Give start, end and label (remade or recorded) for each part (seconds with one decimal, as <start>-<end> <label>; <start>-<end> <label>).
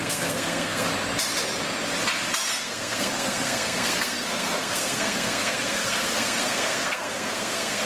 0.0-0.9 remade; 0.9-2.5 recorded; 2.5-7.9 remade